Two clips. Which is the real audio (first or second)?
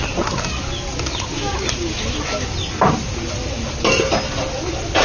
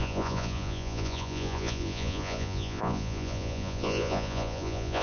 first